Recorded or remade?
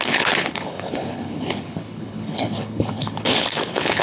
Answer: remade